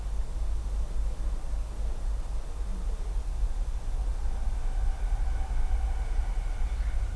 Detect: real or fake real